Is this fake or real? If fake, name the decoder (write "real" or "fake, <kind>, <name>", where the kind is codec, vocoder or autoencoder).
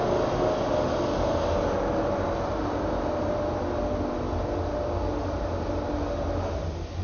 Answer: real